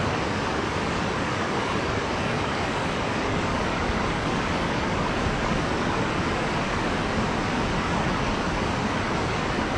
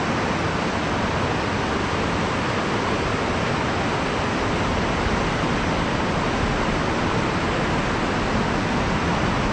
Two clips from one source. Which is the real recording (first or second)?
second